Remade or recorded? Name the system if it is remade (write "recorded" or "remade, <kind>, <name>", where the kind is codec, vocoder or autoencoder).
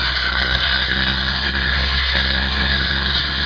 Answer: remade, codec, SNAC